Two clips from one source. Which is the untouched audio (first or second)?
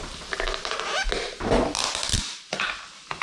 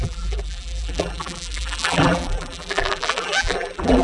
first